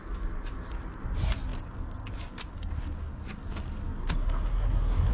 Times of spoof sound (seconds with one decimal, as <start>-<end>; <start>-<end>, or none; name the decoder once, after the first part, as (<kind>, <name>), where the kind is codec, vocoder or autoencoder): 4.0-5.1 (codec, SNAC)